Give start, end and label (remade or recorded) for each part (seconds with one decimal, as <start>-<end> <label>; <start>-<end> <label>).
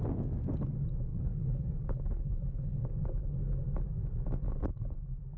0.0-1.1 recorded; 1.1-2.8 remade; 2.8-5.4 recorded